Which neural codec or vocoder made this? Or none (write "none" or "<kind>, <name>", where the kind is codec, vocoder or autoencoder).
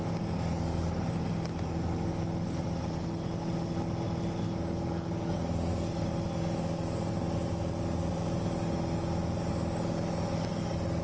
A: none